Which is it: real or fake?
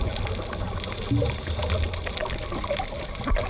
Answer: real